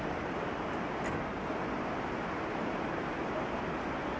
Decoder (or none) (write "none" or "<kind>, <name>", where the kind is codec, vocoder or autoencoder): none